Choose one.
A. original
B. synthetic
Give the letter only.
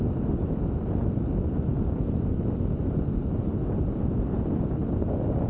A